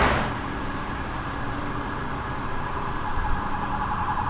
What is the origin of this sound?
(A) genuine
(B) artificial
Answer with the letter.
A